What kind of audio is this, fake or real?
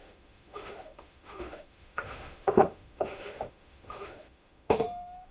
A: fake